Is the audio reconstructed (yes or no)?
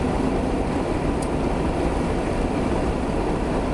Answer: no